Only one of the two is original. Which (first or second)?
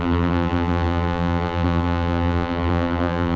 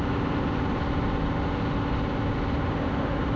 second